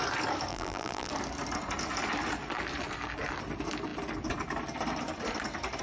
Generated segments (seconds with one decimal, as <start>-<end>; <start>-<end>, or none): 0.5-1.1